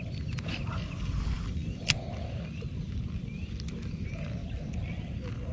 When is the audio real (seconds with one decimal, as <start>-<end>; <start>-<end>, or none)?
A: 0.0-5.5

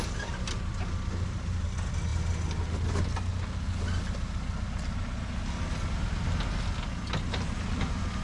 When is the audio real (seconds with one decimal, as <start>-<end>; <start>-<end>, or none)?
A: 0.0-8.2

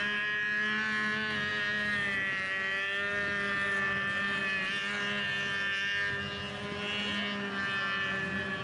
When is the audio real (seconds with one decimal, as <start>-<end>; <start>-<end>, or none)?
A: 0.0-8.6

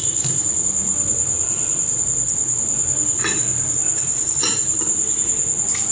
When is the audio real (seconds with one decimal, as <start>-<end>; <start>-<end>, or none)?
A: 0.0-0.9; 2.0-5.9

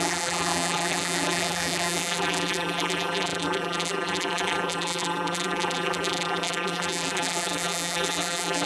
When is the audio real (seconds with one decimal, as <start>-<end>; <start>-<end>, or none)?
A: none

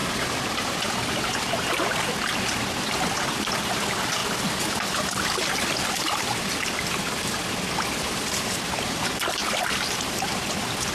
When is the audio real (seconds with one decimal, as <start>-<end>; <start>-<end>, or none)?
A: 0.0-9.4; 10.4-10.9